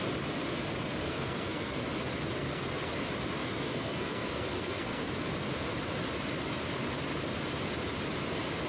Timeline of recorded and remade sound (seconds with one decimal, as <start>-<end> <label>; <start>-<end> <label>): 0.0-1.0 recorded; 1.0-1.8 remade; 1.8-2.4 recorded; 2.4-2.9 remade; 2.9-3.4 recorded; 3.4-5.3 remade; 5.3-8.7 recorded